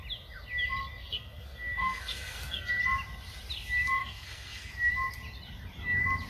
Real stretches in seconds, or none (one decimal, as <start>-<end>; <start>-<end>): 0.0-1.0; 2.7-4.0; 4.7-6.3